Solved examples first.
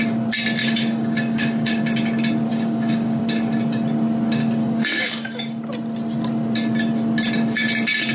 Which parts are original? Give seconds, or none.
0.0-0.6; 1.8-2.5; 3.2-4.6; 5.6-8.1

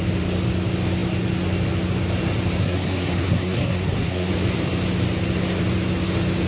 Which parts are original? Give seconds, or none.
0.0-2.6; 4.3-6.5

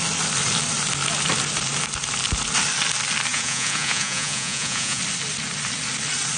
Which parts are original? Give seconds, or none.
0.0-3.3; 5.0-6.4

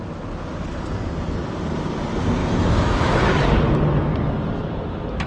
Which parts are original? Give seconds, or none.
0.0-2.4; 3.2-5.3

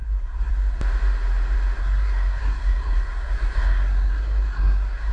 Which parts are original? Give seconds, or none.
0.5-1.8